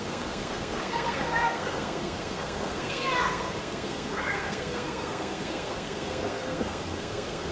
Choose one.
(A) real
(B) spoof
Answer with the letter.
B